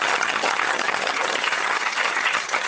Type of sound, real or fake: fake